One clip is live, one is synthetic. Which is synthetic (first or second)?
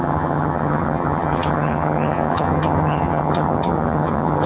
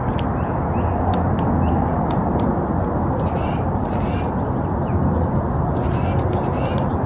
first